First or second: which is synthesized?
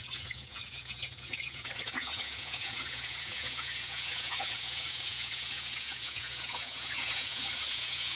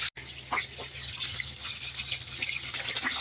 first